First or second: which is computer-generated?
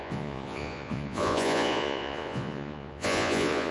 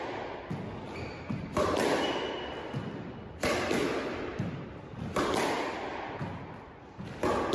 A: first